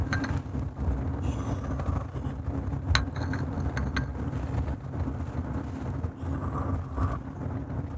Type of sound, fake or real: real